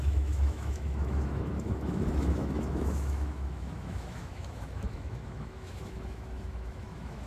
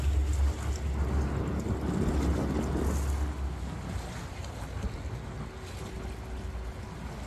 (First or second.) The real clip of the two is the second